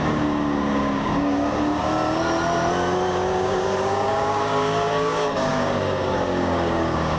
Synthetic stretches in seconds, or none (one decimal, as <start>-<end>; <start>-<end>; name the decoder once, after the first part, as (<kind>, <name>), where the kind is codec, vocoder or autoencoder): 0.0-1.8 (codec, DAC); 3.1-7.2